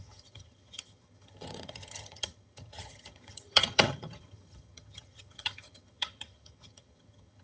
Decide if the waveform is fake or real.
fake